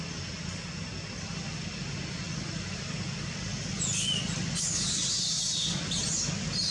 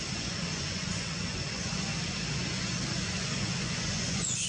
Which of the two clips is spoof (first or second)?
second